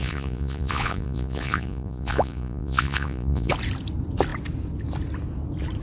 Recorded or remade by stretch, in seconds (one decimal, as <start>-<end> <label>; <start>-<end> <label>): 0.0-3.5 remade; 3.5-5.8 recorded